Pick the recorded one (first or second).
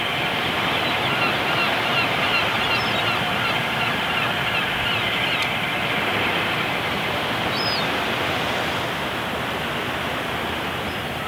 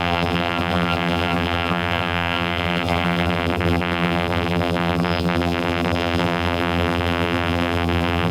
first